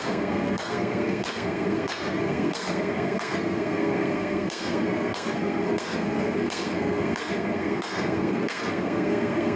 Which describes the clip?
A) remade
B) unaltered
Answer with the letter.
A